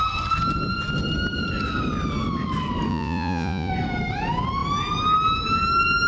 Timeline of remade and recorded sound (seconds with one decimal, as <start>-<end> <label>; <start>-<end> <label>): 0.0-2.9 recorded; 2.9-3.7 remade; 3.7-6.1 recorded